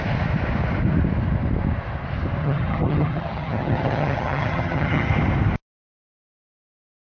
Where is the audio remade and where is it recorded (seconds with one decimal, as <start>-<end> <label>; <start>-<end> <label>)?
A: 0.0-2.4 recorded; 2.4-5.1 remade; 5.1-7.1 recorded